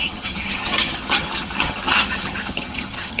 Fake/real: fake